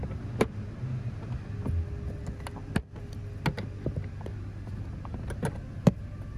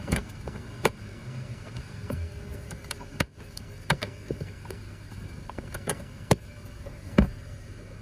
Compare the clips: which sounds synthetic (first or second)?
second